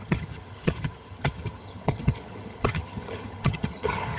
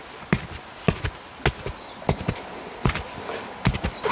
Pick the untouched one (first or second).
second